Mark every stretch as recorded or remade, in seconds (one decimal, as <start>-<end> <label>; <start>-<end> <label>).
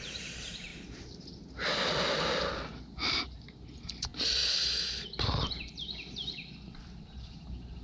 0.0-0.7 remade; 0.7-2.9 recorded; 2.9-4.1 remade; 4.1-7.2 recorded; 7.2-7.8 remade